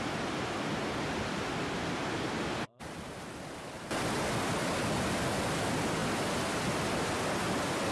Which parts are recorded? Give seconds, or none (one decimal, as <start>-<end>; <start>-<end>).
0.0-7.9